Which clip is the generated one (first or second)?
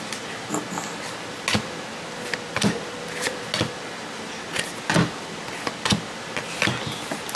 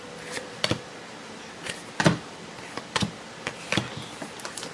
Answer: second